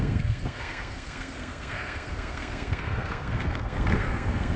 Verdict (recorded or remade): remade